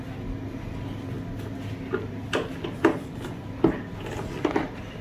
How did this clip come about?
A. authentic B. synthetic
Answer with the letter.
A